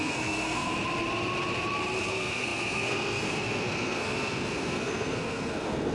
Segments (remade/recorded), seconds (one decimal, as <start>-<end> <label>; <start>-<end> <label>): 0.0-0.7 remade; 0.7-2.1 recorded; 2.1-5.9 remade